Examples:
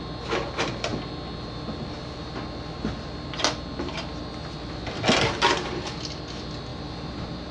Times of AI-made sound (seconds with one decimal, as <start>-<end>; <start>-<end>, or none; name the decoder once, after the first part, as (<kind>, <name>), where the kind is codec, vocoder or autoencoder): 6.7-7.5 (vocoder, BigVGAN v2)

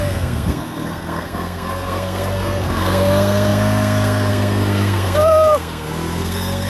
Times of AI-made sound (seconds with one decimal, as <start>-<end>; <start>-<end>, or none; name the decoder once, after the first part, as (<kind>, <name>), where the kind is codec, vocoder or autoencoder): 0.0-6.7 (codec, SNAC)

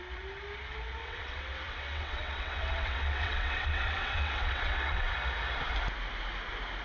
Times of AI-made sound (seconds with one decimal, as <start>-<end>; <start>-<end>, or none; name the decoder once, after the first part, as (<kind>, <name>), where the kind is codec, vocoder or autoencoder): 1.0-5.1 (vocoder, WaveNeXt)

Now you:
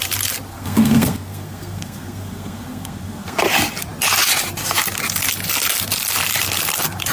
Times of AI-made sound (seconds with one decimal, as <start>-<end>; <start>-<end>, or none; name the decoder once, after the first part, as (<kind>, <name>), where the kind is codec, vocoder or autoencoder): 0.5-3.4 (codec, SNAC)

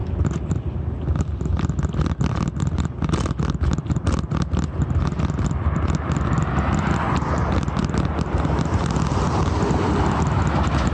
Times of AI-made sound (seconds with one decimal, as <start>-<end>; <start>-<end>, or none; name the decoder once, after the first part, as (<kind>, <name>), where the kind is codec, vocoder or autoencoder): none

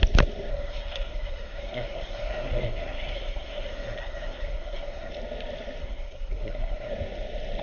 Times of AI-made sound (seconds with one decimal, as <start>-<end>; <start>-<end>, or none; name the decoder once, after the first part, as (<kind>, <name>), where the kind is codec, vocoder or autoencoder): 0.5-5.1 (codec, SNAC); 5.8-6.9

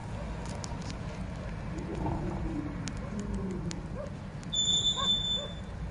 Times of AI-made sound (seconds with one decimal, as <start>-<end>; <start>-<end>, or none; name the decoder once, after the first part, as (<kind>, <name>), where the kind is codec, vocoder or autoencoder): 1.9-2.8 (vocoder, BigVGAN v2)